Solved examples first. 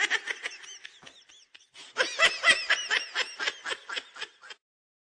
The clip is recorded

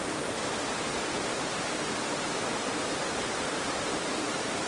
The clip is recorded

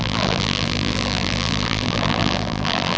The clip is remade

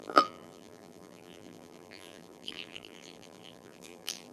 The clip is remade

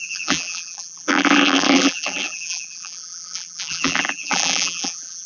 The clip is remade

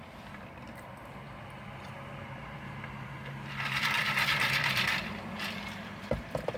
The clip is remade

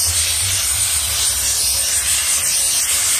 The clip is recorded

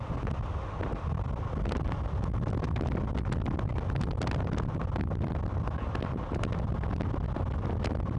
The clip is recorded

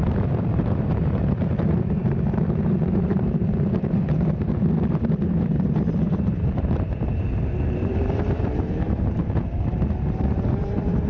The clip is remade